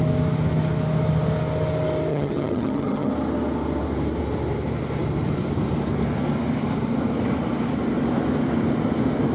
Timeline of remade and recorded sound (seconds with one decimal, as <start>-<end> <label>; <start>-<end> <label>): 0.0-2.1 recorded; 2.1-3.1 remade; 3.1-9.3 recorded

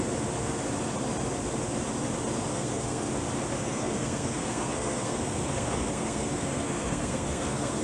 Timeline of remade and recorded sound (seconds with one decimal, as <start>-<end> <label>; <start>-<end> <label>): 0.0-2.5 recorded; 2.5-3.1 remade; 3.1-3.6 recorded; 3.6-7.8 remade

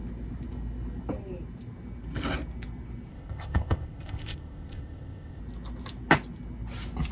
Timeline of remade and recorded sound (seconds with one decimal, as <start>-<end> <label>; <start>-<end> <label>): 0.0-3.1 recorded; 3.1-5.4 remade; 5.4-7.1 recorded

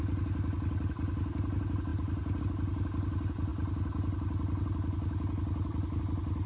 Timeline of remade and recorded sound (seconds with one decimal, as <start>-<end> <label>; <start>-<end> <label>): 0.0-6.5 recorded

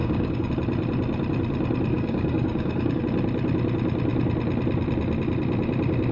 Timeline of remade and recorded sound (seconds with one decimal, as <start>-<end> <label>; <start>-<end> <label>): 0.0-0.5 remade; 0.5-1.9 recorded; 1.9-3.0 remade; 3.0-6.1 recorded

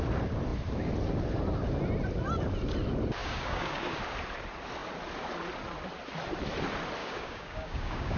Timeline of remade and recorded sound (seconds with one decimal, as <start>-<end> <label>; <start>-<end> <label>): 0.0-3.2 recorded; 3.2-4.0 remade; 4.0-7.0 recorded; 7.0-8.2 remade

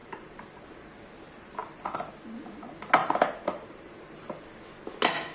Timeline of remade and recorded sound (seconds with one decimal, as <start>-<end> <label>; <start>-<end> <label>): 0.0-0.6 remade; 0.6-3.0 recorded; 3.0-4.0 remade; 4.0-5.3 recorded

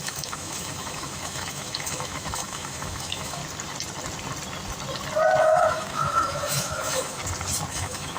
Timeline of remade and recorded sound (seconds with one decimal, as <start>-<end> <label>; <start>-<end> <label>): 0.0-3.4 remade; 3.4-5.4 recorded; 5.4-7.2 remade; 7.2-7.7 recorded; 7.7-8.2 remade